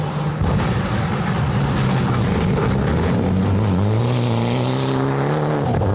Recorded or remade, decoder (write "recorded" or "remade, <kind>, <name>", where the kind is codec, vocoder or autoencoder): recorded